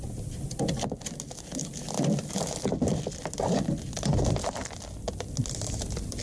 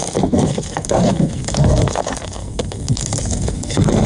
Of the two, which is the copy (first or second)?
second